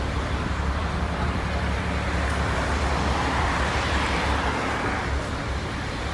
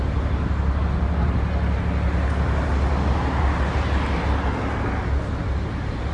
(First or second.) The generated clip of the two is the first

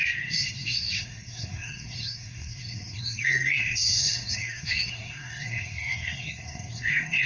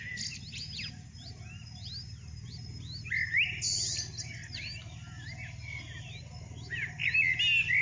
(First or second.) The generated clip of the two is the first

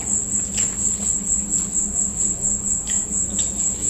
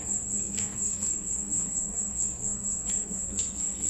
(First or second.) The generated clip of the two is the second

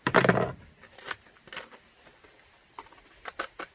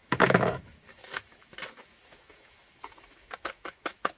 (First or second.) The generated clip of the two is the second